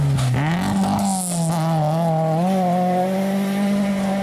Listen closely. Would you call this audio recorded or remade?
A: recorded